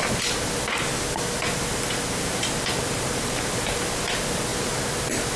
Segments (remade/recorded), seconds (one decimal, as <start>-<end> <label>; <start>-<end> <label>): 0.0-4.5 recorded; 4.5-5.4 remade